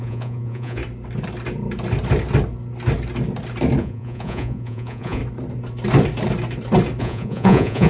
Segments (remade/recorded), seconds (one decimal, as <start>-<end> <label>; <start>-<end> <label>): 0.0-0.8 remade; 0.8-3.8 recorded; 3.8-5.2 remade; 5.2-7.0 recorded; 7.0-7.9 remade